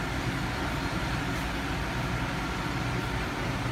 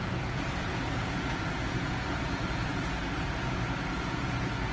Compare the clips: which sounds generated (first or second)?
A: second